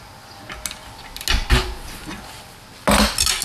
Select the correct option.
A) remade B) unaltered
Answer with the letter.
B